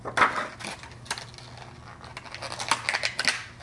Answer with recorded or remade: recorded